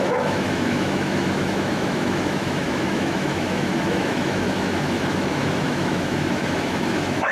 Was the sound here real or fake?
fake